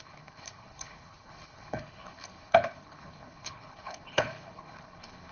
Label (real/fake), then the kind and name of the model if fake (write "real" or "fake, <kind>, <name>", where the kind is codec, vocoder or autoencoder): fake, codec, HILCodec